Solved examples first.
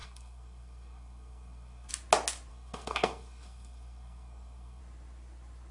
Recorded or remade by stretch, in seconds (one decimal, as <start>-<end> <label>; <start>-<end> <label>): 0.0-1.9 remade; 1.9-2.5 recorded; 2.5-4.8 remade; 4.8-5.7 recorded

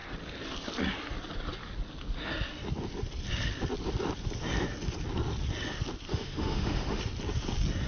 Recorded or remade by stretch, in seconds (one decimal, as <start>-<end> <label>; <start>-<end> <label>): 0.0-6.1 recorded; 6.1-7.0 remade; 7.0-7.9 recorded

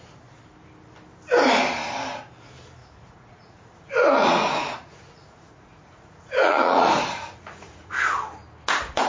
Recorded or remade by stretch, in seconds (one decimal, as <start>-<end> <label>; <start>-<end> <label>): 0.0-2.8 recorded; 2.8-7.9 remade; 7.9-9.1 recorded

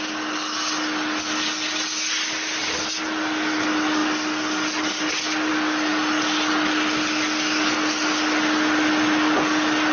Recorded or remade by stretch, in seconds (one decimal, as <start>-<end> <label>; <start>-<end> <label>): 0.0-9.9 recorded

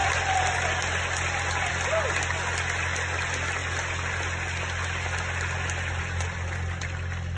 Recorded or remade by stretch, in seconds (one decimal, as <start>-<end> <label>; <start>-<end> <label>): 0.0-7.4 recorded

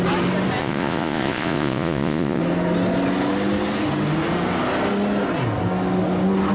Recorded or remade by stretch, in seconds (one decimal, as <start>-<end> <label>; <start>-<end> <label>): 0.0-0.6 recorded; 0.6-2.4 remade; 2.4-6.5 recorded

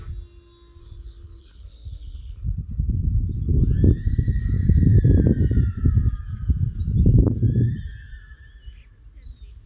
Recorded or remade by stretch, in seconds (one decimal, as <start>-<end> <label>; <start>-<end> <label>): 0.0-0.8 recorded; 0.8-3.2 remade; 3.2-9.7 recorded